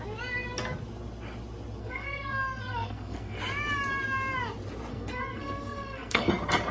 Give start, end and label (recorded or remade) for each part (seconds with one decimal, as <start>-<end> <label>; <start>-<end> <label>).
0.0-1.8 recorded; 1.8-3.4 remade; 3.4-4.9 recorded; 4.9-6.3 remade; 6.3-6.7 recorded